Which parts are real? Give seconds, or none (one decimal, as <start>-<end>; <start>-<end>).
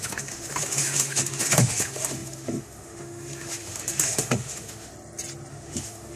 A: 4.9-5.5